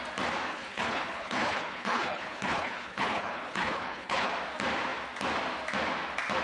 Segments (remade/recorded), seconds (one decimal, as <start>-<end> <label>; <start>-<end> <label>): 0.0-0.5 recorded; 0.5-4.3 remade; 4.3-6.4 recorded